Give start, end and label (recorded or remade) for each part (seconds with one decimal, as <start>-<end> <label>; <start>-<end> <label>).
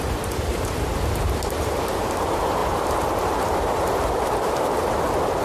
0.0-0.9 remade; 0.9-1.4 recorded; 1.4-5.4 remade